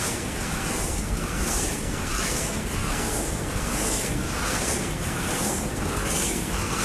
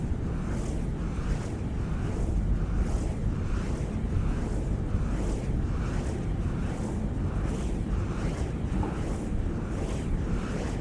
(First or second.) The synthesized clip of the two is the first